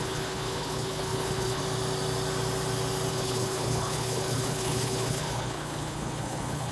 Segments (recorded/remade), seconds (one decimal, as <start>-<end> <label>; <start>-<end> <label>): 0.0-1.6 remade; 1.6-3.1 recorded; 3.1-6.7 remade